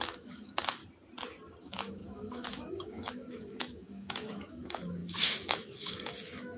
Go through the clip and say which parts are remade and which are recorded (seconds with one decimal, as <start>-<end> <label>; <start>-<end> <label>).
0.0-0.8 remade; 0.8-1.6 recorded; 1.6-6.6 remade